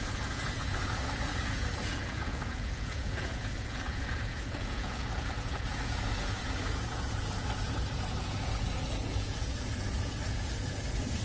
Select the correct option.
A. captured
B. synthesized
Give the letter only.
B